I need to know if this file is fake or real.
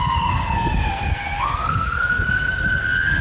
fake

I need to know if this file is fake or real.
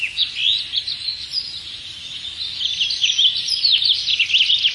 real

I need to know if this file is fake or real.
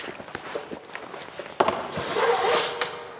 real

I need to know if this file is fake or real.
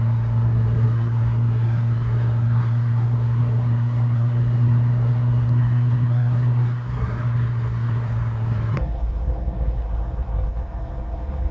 fake